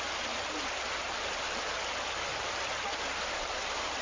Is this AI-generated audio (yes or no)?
no